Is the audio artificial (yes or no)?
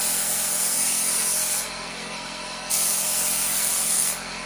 yes